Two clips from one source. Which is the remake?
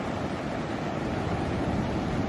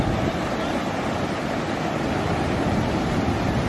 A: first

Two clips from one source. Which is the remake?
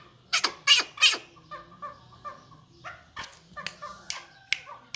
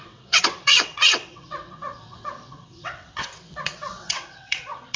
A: second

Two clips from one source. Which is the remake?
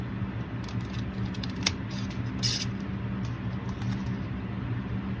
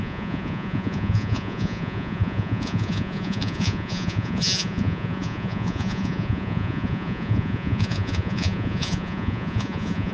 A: second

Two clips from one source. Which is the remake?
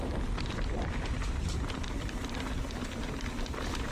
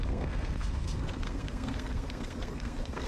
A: second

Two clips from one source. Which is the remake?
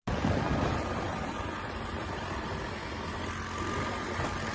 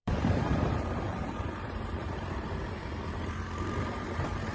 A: second